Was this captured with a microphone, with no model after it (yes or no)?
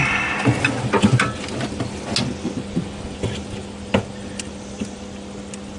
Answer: yes